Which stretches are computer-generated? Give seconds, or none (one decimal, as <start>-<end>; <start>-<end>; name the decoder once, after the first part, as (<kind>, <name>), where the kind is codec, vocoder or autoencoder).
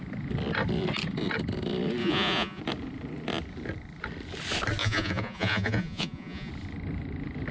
2.0-2.6 (vocoder, Vocos); 4.8-6.5